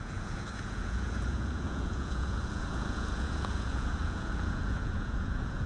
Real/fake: fake